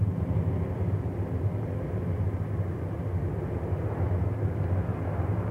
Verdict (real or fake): real